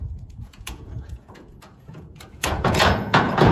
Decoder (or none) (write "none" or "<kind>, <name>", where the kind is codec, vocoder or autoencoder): vocoder, Vocos